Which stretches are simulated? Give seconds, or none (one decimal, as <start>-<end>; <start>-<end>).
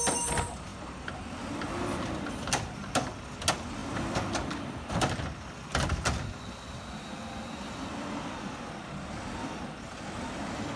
none